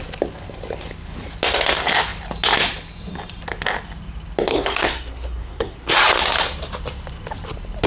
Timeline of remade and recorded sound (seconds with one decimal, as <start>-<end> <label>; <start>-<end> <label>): 0.0-4.5 recorded; 4.5-5.9 remade; 5.9-7.9 recorded